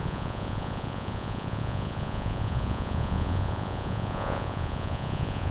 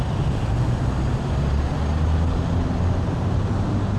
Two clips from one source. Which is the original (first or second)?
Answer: second